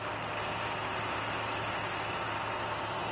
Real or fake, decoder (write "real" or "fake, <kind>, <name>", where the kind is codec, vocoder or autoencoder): real